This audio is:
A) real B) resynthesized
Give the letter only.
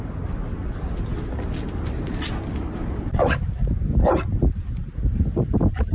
A